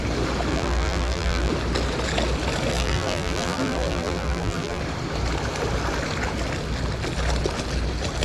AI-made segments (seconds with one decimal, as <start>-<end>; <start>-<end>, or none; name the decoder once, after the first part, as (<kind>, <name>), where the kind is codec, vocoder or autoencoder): 0.5-1.5 (vocoder, BigVGAN v2); 2.7-4.8